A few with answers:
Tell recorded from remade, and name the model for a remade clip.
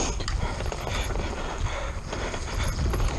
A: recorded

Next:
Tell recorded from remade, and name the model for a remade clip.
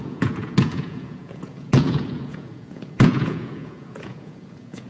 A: remade, vocoder, Vocos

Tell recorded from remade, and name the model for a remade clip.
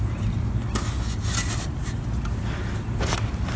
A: recorded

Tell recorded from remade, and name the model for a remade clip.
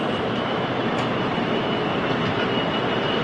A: recorded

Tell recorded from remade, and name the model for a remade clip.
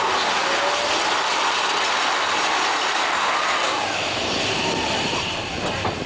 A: recorded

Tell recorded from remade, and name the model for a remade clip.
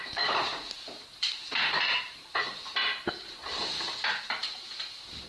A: remade, vocoder, BigVGAN v2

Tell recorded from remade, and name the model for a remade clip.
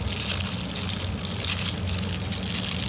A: recorded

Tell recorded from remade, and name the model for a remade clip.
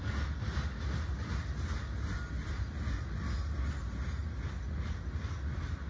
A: recorded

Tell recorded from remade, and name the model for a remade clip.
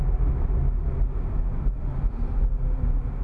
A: recorded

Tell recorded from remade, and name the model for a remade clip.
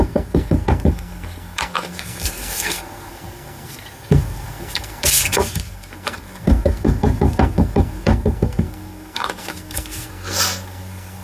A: remade, codec, SNAC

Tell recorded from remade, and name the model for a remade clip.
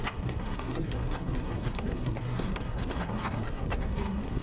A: remade, codec, SNAC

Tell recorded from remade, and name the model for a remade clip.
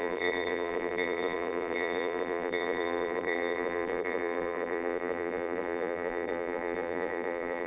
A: remade, vocoder, BigVGAN v2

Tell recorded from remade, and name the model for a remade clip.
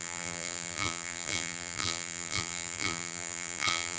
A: remade, vocoder, BigVGAN v2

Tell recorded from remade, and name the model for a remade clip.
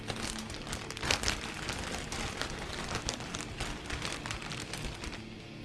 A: recorded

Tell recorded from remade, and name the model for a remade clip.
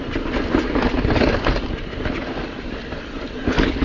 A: recorded